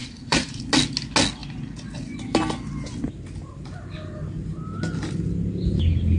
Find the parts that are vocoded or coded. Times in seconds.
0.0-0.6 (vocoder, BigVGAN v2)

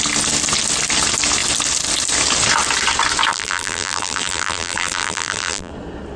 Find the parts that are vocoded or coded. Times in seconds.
3.3-5.7 (vocoder, BigVGAN v2)

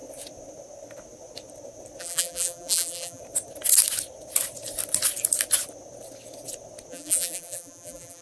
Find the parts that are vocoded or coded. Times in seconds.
2.0-3.2 (vocoder, BigVGAN v2); 6.9-8.2

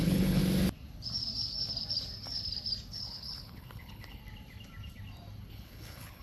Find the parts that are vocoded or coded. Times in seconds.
0.0-0.4 (codec, HILCodec); 2.9-4.2; 5.5-6.2

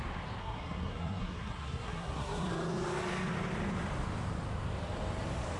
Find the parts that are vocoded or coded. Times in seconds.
0.4-2.5 (codec, SNAC)

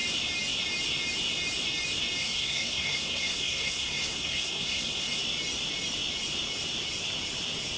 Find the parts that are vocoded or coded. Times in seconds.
2.2-5.2 (codec, SNAC)

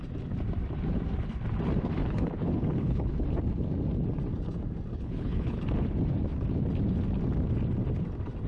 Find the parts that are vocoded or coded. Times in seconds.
2.0-3.1 (codec, HILCodec); 4.9-5.6

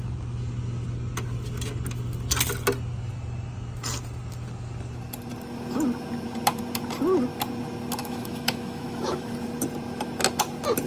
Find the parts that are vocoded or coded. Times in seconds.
8.0-9.3 (autoencoder, DAC-VAE)